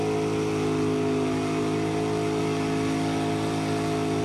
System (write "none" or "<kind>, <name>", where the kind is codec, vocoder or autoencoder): none